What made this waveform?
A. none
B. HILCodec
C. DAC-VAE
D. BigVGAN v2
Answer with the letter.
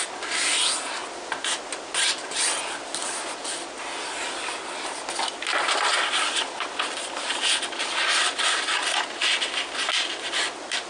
A